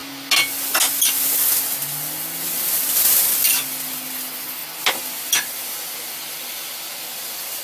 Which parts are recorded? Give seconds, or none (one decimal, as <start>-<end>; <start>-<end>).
0.0-7.6